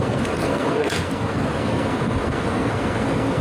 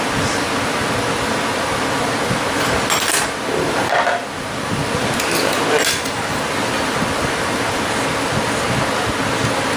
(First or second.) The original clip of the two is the second